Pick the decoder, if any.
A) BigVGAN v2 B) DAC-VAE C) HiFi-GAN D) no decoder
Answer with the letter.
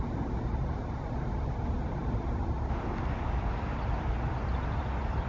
D